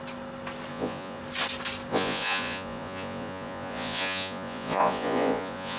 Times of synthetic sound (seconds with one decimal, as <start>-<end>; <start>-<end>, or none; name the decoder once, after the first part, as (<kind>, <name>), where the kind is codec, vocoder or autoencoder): 0.7-1.2 (vocoder, Vocos); 1.9-5.8